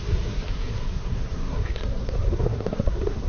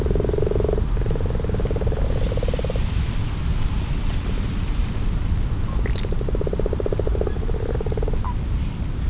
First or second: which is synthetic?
first